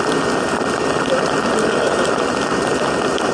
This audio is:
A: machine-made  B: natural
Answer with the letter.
B